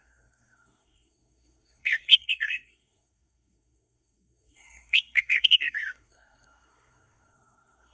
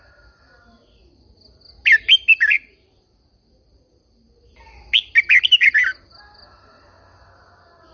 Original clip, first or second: second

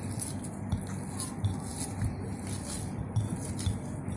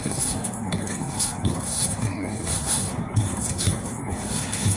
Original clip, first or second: first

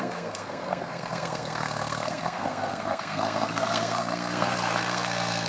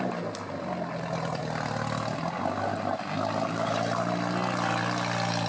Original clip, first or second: second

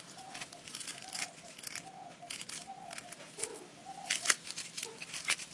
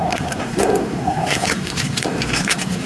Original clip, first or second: first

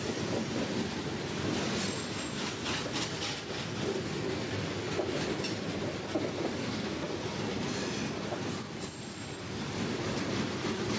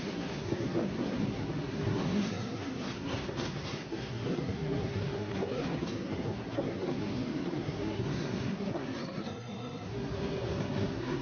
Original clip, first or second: first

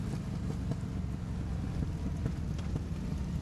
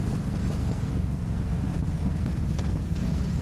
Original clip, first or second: first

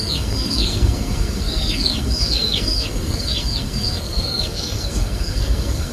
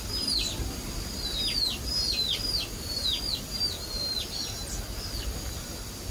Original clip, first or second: second